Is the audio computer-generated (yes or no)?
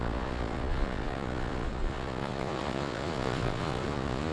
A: yes